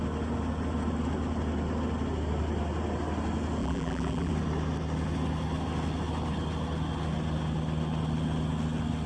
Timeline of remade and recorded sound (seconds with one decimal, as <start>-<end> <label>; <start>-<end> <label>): 0.0-3.6 recorded; 3.6-4.3 remade; 4.3-9.1 recorded